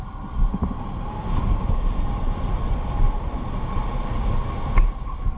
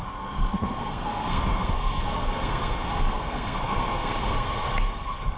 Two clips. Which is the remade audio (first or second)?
second